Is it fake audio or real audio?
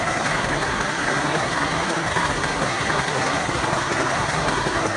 fake